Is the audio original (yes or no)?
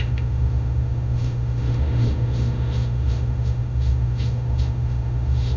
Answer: no